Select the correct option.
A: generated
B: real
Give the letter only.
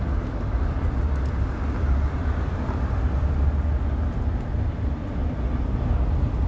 B